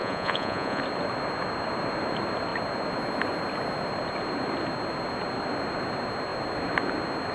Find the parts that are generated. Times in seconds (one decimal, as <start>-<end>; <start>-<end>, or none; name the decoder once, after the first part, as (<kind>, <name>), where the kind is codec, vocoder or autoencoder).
0.0-0.8 (vocoder, Vocos)